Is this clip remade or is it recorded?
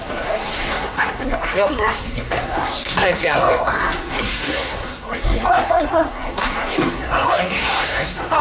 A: remade